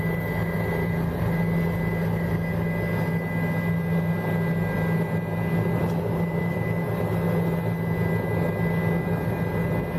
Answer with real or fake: real